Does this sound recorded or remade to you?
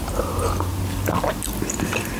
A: recorded